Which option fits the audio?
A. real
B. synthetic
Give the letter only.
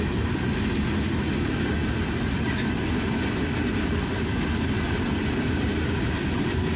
A